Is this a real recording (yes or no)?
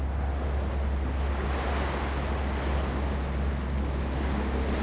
yes